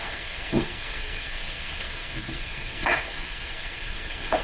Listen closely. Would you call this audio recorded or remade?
remade